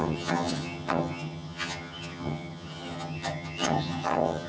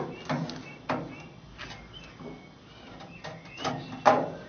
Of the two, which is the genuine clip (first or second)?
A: second